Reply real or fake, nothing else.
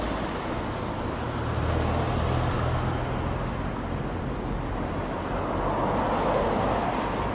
real